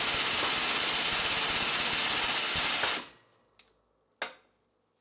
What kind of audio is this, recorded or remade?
recorded